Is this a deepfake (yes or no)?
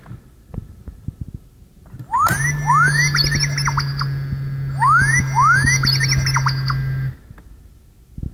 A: no